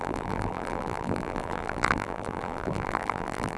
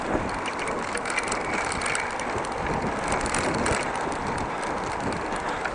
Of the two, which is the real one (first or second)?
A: second